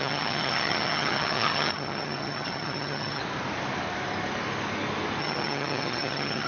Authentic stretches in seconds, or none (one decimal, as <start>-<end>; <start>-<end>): 3.2-5.2